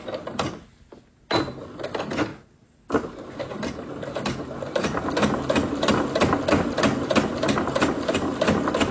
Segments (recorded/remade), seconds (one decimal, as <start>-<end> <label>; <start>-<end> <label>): 0.0-8.9 recorded